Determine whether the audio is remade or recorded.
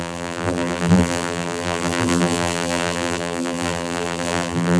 remade